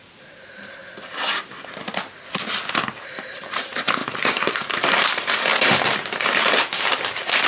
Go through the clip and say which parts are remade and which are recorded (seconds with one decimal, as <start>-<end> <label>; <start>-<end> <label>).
0.0-0.8 remade; 0.8-3.0 recorded; 3.0-7.5 remade

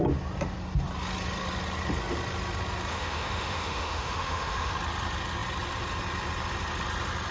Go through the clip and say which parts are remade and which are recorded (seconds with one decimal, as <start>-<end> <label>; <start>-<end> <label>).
0.0-2.9 recorded; 2.9-4.7 remade; 4.7-7.3 recorded

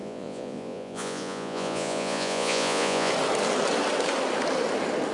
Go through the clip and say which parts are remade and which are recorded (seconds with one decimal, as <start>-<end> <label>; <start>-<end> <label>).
0.0-3.1 remade; 3.1-5.1 recorded

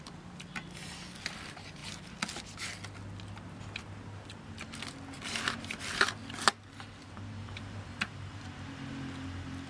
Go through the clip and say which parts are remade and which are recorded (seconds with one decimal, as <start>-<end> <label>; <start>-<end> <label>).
0.0-7.0 recorded; 7.0-8.4 remade; 8.4-9.7 recorded

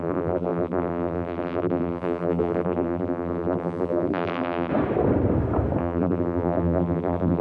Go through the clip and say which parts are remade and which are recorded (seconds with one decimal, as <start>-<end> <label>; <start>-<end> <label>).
0.0-4.7 remade; 4.7-5.8 recorded; 5.8-7.4 remade

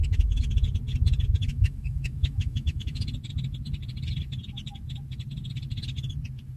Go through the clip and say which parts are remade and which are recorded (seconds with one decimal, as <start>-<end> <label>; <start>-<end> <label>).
0.0-0.5 remade; 0.5-1.5 recorded; 1.5-3.0 remade; 3.0-6.6 recorded

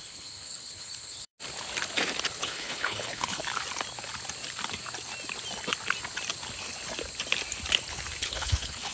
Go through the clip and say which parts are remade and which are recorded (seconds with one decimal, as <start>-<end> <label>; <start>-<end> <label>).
0.0-1.3 remade; 1.3-2.4 recorded; 2.4-3.4 remade; 3.4-8.2 recorded; 8.2-8.9 remade

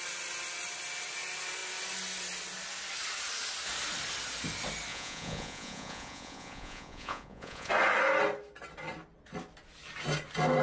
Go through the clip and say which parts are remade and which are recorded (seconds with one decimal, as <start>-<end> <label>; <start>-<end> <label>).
0.0-4.9 recorded; 4.9-7.7 remade; 7.7-10.6 recorded